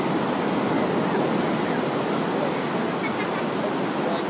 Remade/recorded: recorded